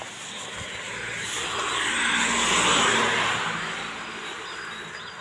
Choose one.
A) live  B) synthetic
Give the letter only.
A